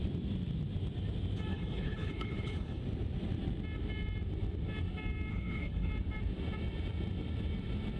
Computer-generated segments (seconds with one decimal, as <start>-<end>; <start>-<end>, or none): 1.5-2.8; 5.3-5.9